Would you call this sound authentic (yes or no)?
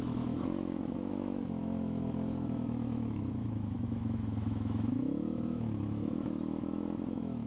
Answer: no